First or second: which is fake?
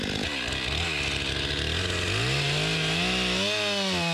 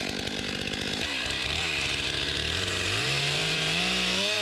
second